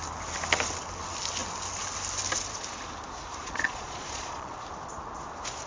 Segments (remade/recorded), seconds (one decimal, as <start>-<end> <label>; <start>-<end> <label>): 0.0-3.4 recorded; 3.4-4.5 remade; 4.5-5.7 recorded